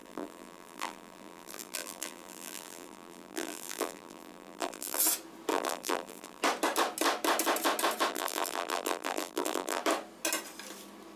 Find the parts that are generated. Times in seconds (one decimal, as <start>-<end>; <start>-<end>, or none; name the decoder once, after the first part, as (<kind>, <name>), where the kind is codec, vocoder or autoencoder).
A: 0.0-5.0 (vocoder, BigVGAN v2); 5.5-6.4; 8.1-9.8